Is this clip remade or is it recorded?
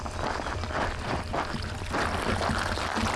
recorded